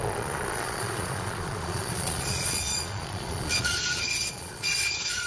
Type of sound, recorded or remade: remade